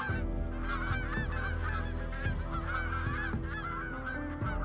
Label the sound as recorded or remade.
recorded